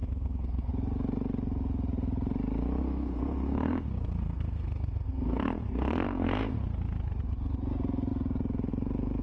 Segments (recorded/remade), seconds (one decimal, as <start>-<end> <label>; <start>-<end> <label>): 0.0-0.7 remade; 0.7-2.8 recorded; 2.8-6.5 remade; 6.5-9.2 recorded